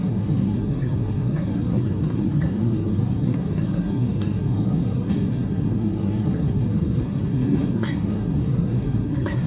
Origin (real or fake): fake